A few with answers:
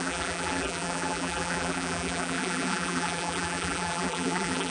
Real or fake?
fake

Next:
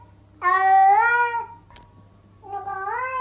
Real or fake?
real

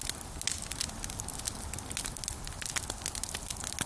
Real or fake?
real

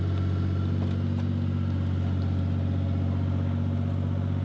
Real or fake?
real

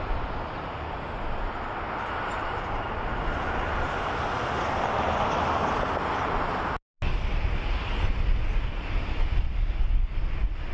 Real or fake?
real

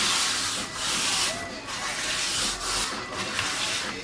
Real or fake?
real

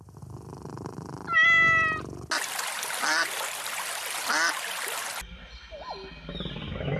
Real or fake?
real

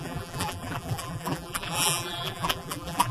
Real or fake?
fake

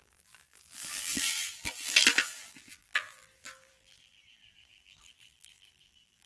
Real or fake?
fake